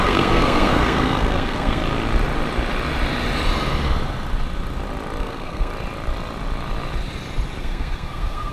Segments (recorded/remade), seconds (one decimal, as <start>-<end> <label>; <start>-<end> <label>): 0.0-1.8 remade; 1.8-5.2 recorded; 5.2-5.7 remade; 5.7-7.6 recorded; 7.6-8.5 remade